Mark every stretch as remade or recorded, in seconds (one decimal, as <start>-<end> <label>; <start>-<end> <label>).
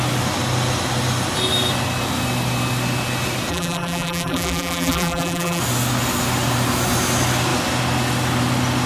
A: 0.0-3.5 recorded; 3.5-5.6 remade; 5.6-8.9 recorded